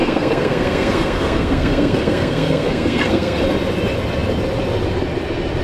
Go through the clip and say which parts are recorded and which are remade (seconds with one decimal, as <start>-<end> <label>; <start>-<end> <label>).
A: 0.0-3.4 remade; 3.4-5.6 recorded